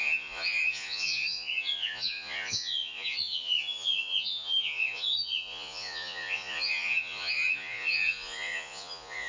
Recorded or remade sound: remade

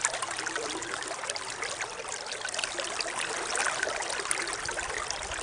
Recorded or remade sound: recorded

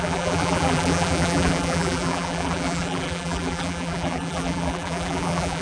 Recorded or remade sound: remade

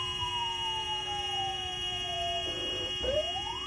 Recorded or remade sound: remade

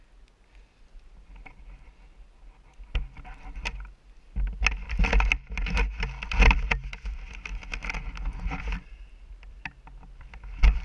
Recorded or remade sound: recorded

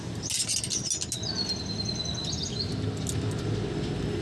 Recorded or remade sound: recorded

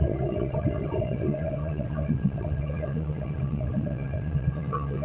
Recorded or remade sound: remade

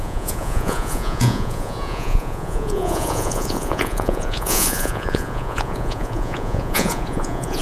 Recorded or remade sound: remade